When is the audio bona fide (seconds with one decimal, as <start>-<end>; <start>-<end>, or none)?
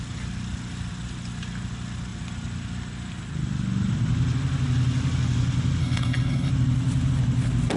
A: 0.0-5.8; 6.5-7.8